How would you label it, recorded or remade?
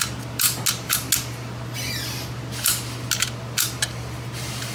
recorded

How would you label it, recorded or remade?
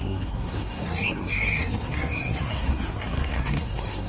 remade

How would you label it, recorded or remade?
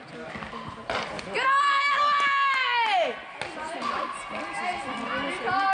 recorded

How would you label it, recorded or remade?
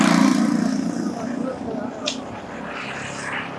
recorded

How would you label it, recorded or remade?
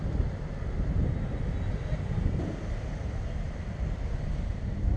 recorded